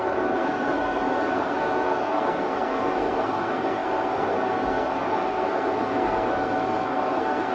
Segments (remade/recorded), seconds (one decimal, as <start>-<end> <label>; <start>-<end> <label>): 0.0-7.5 remade